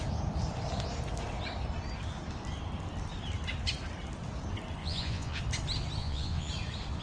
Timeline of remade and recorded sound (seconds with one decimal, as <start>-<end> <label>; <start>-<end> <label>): 0.0-4.8 recorded; 4.8-5.4 remade; 5.4-6.0 recorded; 6.0-6.5 remade; 6.5-7.0 recorded